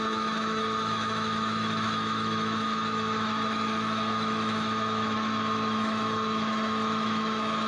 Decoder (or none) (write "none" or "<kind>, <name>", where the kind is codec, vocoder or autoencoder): autoencoder, DAC-VAE